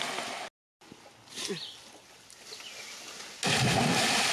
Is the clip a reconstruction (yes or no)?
no